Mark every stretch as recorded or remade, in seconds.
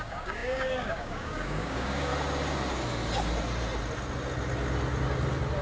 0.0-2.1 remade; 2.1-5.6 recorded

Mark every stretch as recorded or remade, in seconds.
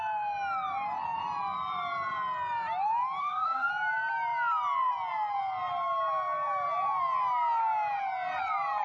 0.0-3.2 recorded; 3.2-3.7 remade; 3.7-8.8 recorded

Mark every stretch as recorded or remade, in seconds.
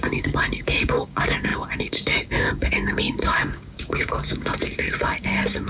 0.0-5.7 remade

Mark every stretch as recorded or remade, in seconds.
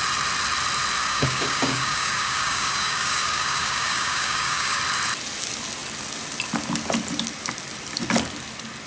0.0-1.0 recorded; 1.0-4.8 remade; 4.8-8.9 recorded